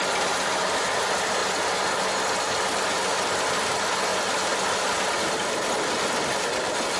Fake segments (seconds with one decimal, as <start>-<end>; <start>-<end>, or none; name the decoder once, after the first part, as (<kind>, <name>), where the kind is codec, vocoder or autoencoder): none